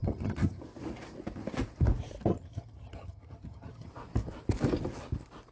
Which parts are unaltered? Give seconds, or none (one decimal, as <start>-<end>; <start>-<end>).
0.6-2.3; 3.9-5.5